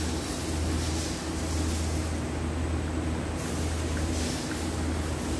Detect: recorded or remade recorded